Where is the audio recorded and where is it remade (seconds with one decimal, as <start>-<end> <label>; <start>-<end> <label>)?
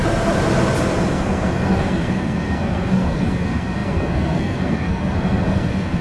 0.0-1.1 recorded; 1.1-6.0 remade